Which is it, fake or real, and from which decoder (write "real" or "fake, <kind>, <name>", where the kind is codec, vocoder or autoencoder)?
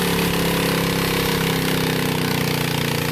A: real